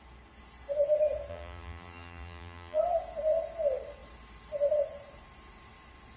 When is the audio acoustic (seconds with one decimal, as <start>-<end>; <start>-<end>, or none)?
0.0-1.3; 2.8-6.2